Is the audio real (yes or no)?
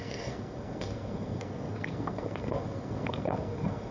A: no